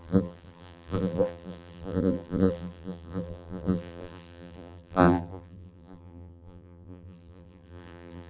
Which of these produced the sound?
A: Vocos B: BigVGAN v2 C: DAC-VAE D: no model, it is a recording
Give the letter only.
B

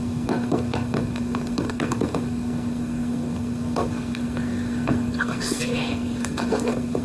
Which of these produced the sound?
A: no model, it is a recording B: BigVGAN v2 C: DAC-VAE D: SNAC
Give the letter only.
D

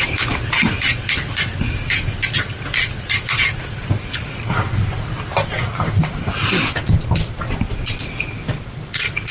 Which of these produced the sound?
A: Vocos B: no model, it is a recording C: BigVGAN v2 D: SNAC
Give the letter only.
B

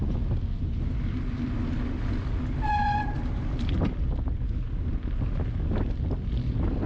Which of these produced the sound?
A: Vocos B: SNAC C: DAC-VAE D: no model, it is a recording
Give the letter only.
D